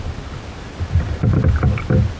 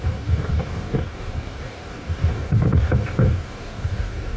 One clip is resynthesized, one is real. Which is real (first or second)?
first